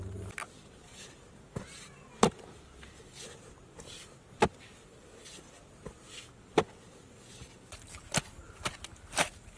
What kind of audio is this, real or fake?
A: real